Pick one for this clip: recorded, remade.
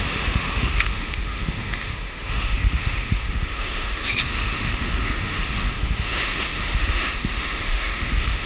remade